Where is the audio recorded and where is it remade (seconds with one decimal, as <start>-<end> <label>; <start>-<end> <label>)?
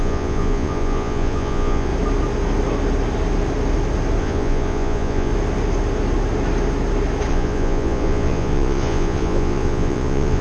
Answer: 0.0-1.9 remade; 1.9-4.2 recorded; 4.2-5.3 remade; 5.3-7.3 recorded; 7.3-10.4 remade